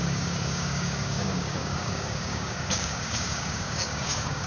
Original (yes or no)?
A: no